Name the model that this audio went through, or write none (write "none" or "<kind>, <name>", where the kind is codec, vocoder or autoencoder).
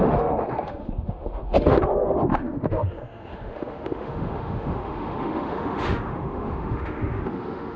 autoencoder, DAC-VAE